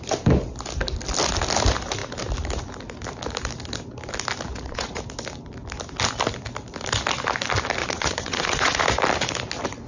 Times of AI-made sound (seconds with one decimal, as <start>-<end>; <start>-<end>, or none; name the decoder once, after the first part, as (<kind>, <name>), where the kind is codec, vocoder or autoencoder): 4.5-5.0 (vocoder, Vocos); 7.8-8.8